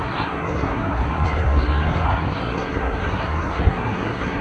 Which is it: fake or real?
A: fake